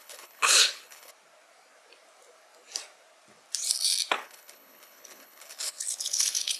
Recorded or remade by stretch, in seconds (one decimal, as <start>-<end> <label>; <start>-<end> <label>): 0.0-1.1 remade; 1.1-4.1 recorded; 4.1-6.6 remade